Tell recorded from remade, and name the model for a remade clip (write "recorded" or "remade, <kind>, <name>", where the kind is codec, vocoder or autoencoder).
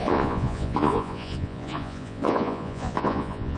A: remade, vocoder, Vocos